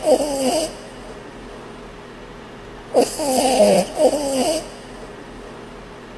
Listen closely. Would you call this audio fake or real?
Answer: real